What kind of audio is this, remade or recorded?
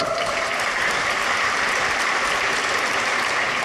remade